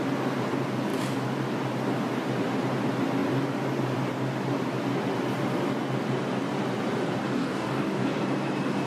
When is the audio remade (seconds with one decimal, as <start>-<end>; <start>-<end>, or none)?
7.2-8.2